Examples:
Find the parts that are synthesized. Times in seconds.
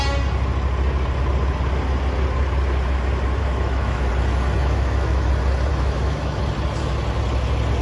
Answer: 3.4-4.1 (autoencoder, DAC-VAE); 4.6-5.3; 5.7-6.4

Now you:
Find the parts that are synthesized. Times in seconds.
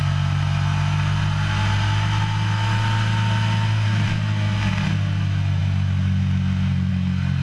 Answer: none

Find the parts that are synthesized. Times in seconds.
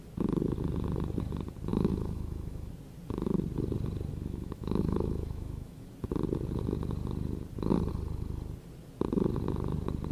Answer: 1.7-2.7 (autoencoder, DAC-VAE); 4.1-5.9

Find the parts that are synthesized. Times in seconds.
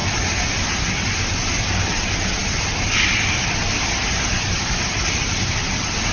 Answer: none